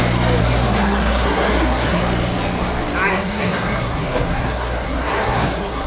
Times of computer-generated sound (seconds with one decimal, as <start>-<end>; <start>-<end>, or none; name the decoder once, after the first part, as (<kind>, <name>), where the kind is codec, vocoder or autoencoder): 0.4-2.0 (codec, SNAC); 3.1-5.9